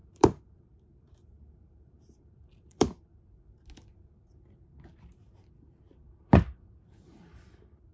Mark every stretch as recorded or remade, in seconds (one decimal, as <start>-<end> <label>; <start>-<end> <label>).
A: 0.0-3.1 remade; 3.1-7.9 recorded